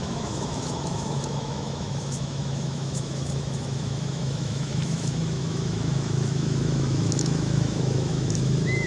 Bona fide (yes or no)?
no